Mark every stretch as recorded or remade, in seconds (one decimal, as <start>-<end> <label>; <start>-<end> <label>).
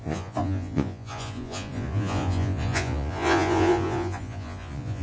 0.0-5.0 remade